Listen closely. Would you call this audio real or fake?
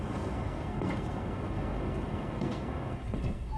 fake